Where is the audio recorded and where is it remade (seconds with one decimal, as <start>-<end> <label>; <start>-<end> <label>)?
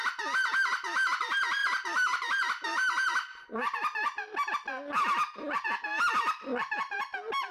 0.0-7.5 recorded